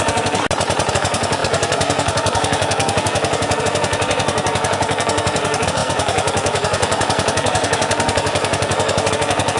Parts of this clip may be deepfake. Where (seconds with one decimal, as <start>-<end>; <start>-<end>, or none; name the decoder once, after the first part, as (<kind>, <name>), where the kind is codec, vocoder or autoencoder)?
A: 0.0-0.4 (codec, SNAC); 0.9-9.6